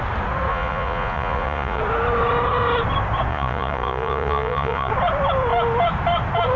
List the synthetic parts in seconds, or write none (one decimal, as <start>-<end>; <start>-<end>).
0.5-1.8; 3.3-4.9